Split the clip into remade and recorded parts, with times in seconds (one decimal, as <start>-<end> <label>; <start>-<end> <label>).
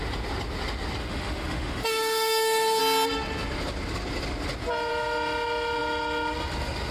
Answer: 0.0-1.0 recorded; 1.0-2.8 remade; 2.8-6.9 recorded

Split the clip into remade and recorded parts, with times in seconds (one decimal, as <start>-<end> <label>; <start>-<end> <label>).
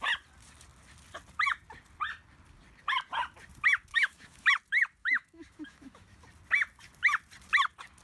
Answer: 0.0-3.9 recorded; 3.9-4.5 remade; 4.5-5.0 recorded; 5.0-6.2 remade; 6.2-8.0 recorded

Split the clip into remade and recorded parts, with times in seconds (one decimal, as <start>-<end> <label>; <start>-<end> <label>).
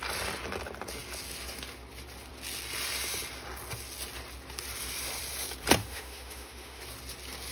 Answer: 0.0-5.8 recorded; 5.8-6.8 remade; 6.8-7.5 recorded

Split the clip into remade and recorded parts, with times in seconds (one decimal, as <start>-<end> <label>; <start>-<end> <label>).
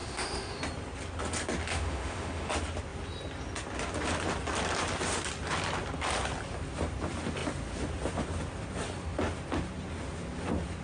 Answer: 0.0-0.6 remade; 0.6-1.7 recorded; 1.7-2.5 remade; 2.5-10.8 recorded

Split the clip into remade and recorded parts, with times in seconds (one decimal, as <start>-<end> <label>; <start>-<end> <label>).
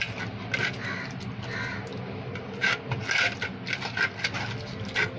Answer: 0.0-5.2 recorded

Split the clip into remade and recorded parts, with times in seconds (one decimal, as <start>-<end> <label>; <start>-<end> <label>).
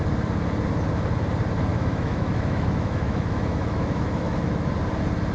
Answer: 0.0-1.7 recorded; 1.7-4.7 remade; 4.7-5.3 recorded